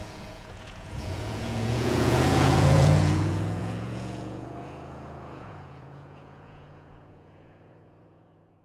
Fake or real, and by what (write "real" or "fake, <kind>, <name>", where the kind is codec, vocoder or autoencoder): fake, vocoder, Vocos